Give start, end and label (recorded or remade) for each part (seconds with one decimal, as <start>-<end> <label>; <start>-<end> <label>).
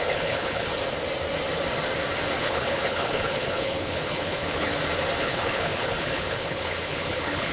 0.0-0.7 remade; 0.7-2.4 recorded; 2.4-4.7 remade; 4.7-5.2 recorded; 5.2-7.5 remade